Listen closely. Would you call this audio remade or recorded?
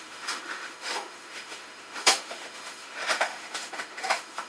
remade